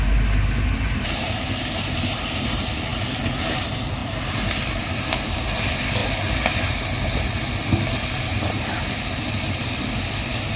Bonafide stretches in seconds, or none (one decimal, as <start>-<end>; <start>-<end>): 0.0-10.6